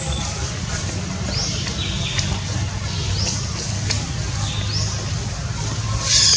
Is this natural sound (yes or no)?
yes